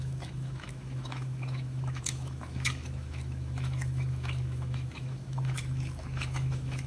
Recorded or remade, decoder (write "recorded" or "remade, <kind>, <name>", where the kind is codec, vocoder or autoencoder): remade, autoencoder, DAC-VAE